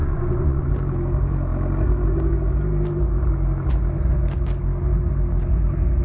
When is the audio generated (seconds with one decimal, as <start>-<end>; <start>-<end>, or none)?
0.0-0.7